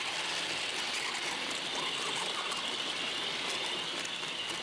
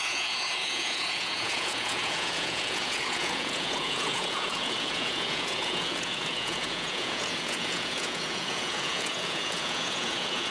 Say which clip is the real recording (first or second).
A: first